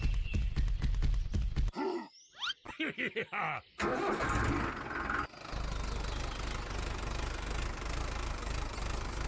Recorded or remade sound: recorded